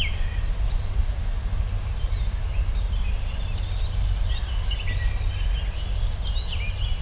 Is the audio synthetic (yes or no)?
no